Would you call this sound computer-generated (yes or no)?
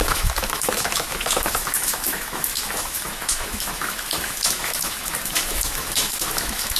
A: yes